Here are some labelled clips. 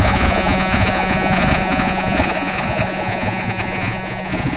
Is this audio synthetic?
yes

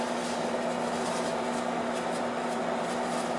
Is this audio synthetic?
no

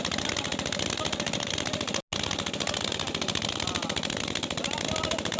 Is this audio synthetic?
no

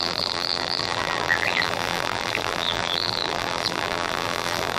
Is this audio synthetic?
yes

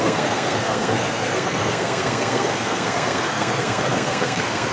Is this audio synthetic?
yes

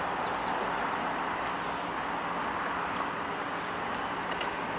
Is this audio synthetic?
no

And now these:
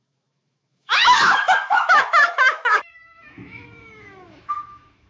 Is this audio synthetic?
yes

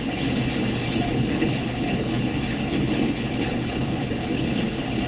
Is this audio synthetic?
yes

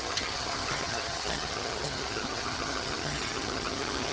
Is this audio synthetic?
yes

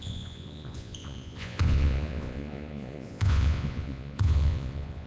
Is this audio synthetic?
yes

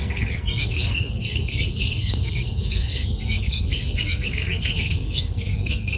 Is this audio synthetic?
yes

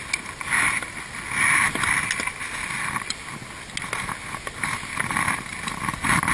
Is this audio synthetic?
no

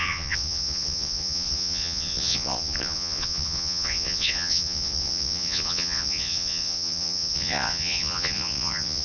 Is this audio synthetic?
yes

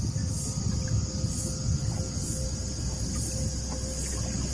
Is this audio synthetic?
no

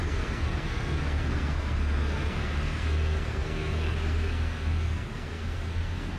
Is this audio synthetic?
yes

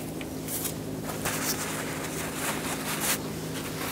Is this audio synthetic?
no